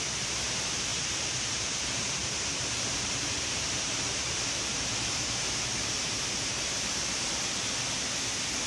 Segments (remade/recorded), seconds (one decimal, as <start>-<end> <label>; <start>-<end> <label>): 0.0-0.9 recorded; 0.9-1.8 remade; 1.8-2.2 recorded; 2.2-7.4 remade; 7.4-8.7 recorded